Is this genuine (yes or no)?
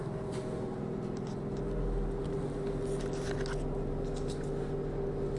yes